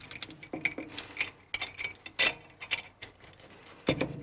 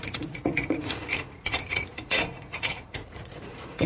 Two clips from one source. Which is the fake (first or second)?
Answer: second